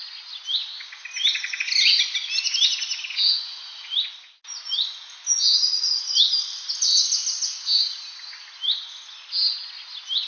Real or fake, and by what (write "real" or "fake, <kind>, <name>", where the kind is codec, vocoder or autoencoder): real